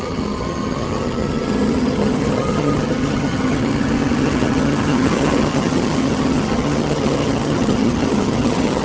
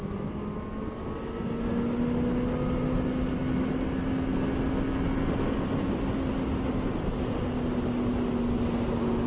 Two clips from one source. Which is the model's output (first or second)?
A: first